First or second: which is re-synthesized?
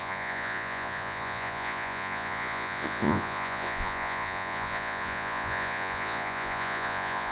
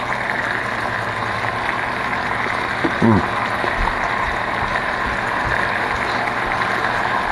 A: first